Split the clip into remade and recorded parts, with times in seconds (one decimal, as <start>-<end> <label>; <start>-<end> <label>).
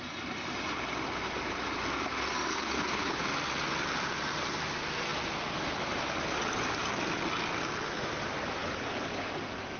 0.0-2.5 recorded; 2.5-3.2 remade; 3.2-8.6 recorded; 8.6-9.3 remade; 9.3-9.8 recorded